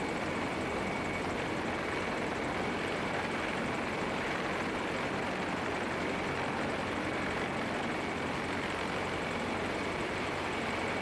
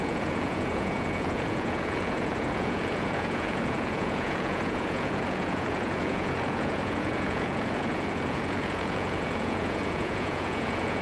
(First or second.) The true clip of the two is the first